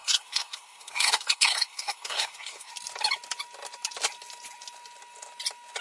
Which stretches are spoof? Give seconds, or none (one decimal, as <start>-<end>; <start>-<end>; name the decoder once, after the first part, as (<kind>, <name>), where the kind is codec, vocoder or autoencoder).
0.0-2.7 (codec, SNAC)